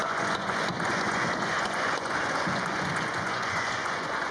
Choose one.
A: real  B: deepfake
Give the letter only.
B